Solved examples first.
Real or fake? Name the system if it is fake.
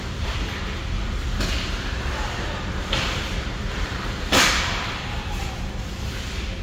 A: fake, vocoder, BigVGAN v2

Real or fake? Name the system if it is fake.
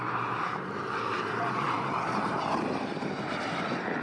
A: fake, vocoder, BigVGAN v2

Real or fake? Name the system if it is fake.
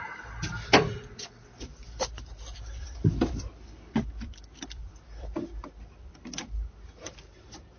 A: fake, vocoder, BigVGAN v2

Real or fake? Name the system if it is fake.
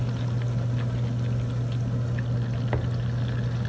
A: real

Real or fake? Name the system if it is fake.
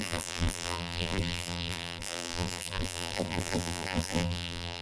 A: fake, vocoder, BigVGAN v2